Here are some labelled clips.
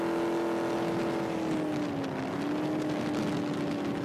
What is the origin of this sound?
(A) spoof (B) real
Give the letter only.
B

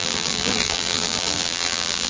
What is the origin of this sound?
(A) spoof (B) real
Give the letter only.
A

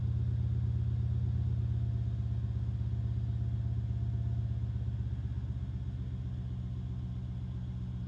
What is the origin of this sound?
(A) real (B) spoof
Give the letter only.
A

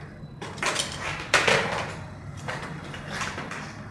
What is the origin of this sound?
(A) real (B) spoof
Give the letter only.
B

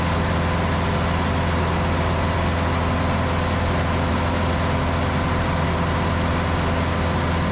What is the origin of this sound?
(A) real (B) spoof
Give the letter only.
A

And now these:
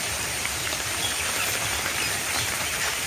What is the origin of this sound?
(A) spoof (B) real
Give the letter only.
A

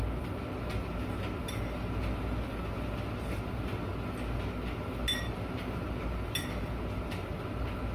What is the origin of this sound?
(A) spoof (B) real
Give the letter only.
B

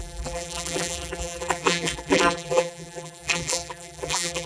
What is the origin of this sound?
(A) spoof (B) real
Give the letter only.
A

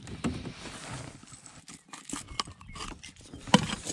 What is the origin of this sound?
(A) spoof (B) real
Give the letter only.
B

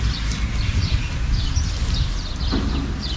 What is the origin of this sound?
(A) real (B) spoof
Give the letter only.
A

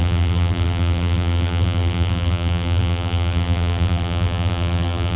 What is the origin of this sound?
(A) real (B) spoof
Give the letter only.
B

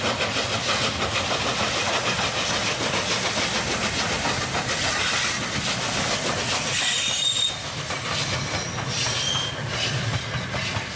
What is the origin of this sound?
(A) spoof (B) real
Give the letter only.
B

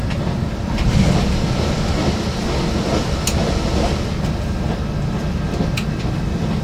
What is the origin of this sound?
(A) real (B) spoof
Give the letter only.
A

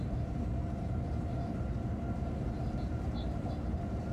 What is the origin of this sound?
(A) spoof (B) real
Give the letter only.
A